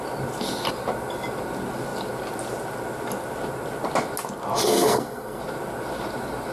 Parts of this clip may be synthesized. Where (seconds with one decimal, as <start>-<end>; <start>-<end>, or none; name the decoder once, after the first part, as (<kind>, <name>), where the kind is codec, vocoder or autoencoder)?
4.6-5.4 (codec, SNAC)